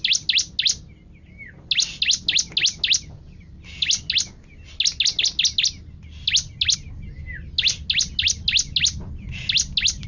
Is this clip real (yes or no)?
yes